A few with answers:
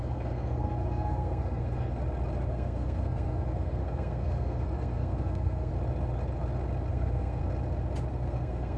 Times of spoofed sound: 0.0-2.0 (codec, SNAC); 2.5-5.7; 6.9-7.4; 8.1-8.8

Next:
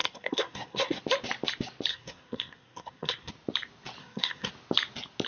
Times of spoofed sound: 0.0-1.0 (codec, SNAC); 1.9-3.3; 4.0-4.5